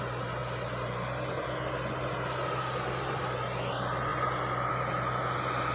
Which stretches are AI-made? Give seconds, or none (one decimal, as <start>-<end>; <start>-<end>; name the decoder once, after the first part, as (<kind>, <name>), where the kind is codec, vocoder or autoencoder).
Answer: none